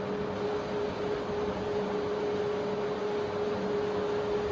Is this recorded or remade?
recorded